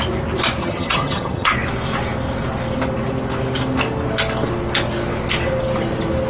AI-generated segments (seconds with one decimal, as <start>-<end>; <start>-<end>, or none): 0.6-1.5